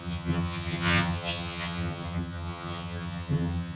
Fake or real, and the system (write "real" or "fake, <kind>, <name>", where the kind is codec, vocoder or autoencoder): fake, vocoder, HiFi-GAN